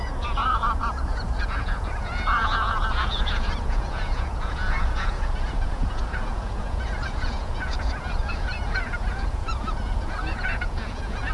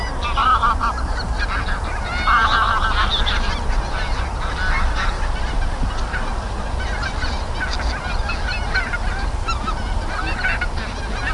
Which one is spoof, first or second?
first